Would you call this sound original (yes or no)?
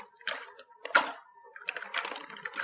yes